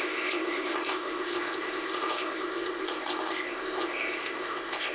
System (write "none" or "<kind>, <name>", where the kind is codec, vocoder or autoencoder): codec, ZipCodec